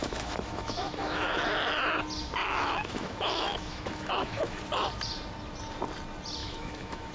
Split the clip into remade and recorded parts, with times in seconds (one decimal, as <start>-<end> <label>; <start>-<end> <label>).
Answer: 0.0-1.4 remade; 1.4-2.4 recorded; 2.4-4.6 remade; 4.6-6.4 recorded; 6.4-7.1 remade